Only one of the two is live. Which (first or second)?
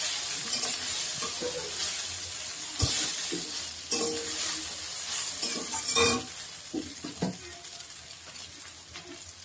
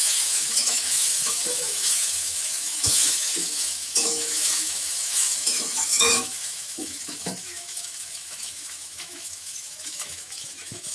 first